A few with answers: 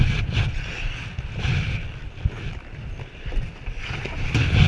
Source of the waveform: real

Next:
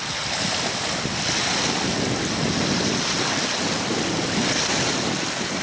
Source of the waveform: real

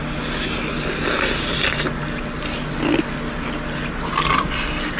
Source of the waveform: real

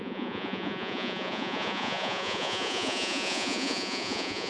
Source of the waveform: fake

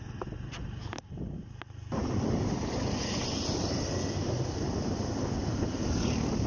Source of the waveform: real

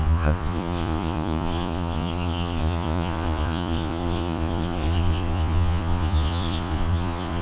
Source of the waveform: fake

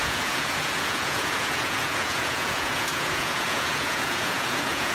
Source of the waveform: fake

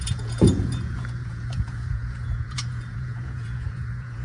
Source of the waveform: fake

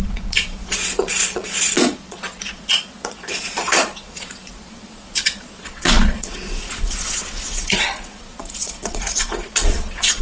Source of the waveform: fake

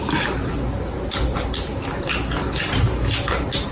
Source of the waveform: real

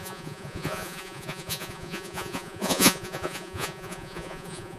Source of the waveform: fake